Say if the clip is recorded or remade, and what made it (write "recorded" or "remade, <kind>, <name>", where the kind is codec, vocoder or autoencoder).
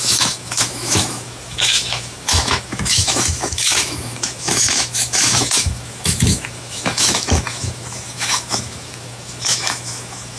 remade, autoencoder, DAC-VAE